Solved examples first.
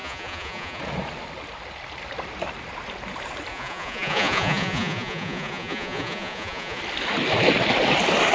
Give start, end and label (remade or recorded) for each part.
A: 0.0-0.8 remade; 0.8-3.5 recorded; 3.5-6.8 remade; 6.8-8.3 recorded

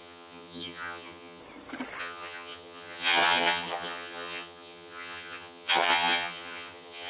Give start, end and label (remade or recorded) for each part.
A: 0.0-1.4 remade; 1.4-2.0 recorded; 2.0-7.1 remade

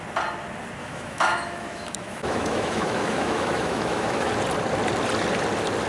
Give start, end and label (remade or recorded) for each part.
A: 0.0-0.8 recorded; 0.8-4.3 remade; 4.3-5.9 recorded

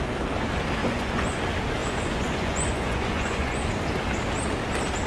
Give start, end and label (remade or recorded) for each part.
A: 0.0-0.8 recorded; 0.8-1.4 remade; 1.4-1.8 recorded; 1.8-3.7 remade; 3.7-5.1 recorded